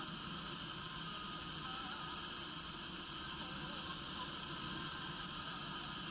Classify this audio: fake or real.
real